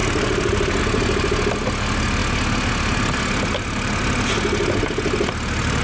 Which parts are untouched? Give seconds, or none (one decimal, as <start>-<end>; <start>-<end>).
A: 0.0-5.8